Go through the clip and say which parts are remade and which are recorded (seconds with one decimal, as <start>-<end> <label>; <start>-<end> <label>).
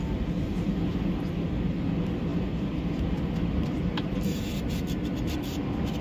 0.0-2.3 recorded; 2.3-6.0 remade